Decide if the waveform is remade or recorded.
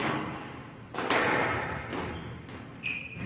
recorded